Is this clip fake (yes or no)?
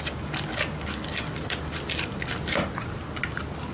no